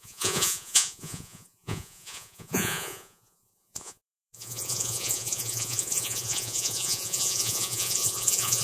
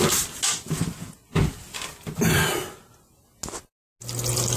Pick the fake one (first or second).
first